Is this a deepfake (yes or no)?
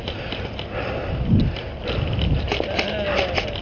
no